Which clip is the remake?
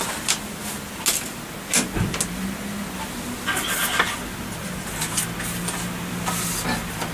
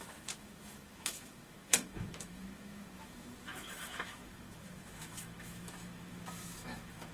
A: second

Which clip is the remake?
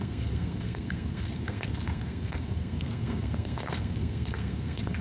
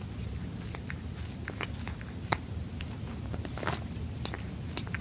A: first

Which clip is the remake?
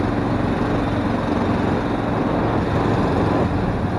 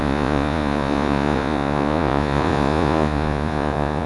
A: second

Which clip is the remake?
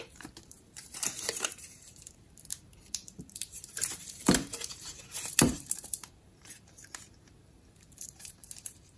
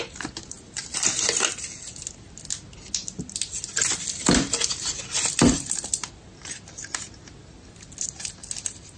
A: first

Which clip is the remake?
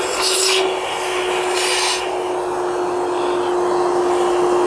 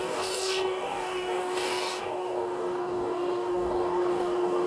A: second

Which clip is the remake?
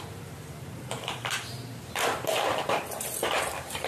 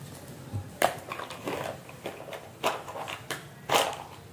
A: first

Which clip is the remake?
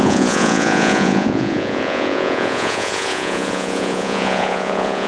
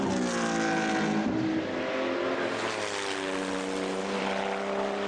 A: first